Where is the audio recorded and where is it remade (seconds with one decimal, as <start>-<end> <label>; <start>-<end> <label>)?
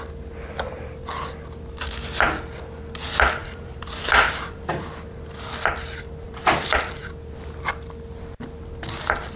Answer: 0.0-3.4 recorded; 3.4-7.4 remade; 7.4-9.4 recorded